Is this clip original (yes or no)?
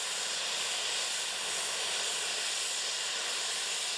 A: yes